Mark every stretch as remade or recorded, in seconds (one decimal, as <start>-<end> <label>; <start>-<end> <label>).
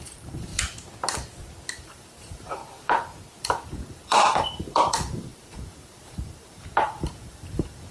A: 0.0-0.5 remade; 0.5-1.8 recorded; 1.8-2.6 remade; 2.6-3.4 recorded; 3.4-7.9 remade